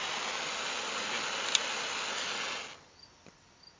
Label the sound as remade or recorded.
recorded